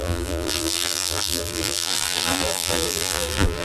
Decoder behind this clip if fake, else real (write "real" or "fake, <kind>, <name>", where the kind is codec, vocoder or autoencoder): fake, vocoder, BigVGAN v2